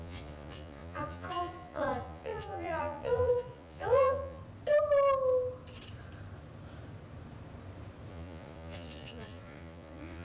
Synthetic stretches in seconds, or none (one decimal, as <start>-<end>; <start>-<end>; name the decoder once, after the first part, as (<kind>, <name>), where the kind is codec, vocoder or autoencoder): 0.0-4.4 (vocoder, Vocos); 8.1-10.2